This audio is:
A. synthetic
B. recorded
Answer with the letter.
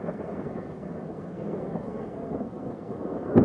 A